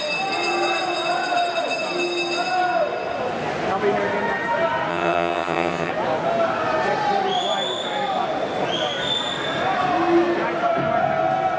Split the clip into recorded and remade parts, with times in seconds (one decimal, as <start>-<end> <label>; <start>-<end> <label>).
0.0-4.9 recorded; 4.9-5.9 remade; 5.9-11.6 recorded